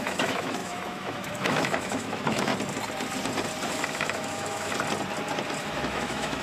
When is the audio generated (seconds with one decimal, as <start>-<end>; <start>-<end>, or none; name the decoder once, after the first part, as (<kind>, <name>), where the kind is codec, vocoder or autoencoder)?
0.0-2.5 (autoencoder, DAC-VAE); 3.7-4.7; 5.6-6.4